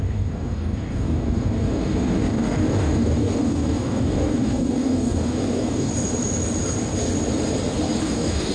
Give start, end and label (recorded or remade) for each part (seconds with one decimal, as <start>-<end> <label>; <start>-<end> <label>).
0.0-5.9 remade; 5.9-8.0 recorded; 8.0-8.5 remade